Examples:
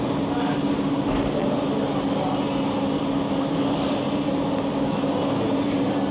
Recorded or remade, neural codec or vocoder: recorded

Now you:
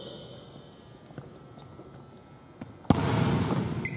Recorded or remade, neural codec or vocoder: recorded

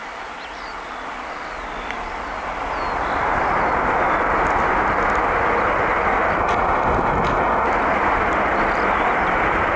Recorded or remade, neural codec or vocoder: recorded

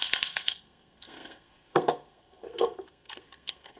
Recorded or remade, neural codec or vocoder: remade, codec, SNAC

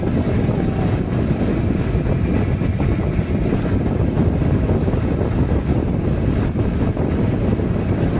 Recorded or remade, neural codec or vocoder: recorded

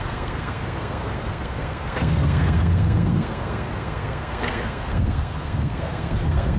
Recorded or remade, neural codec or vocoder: remade, codec, SNAC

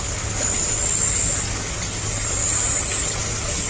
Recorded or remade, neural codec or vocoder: recorded